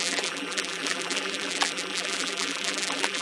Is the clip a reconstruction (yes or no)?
yes